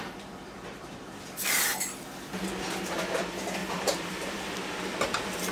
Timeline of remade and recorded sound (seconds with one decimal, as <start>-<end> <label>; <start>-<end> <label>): 0.0-1.7 remade; 1.7-2.6 recorded; 2.6-5.5 remade